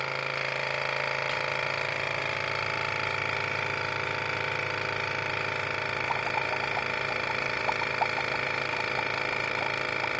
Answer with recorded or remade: recorded